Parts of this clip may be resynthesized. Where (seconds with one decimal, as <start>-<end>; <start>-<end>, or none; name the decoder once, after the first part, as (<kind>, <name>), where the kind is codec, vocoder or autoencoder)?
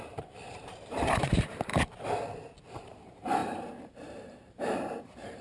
0.0-1.7 (vocoder, BigVGAN v2); 2.8-5.4